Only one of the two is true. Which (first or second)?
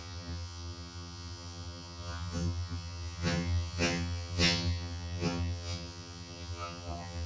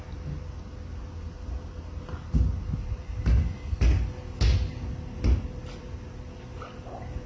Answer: second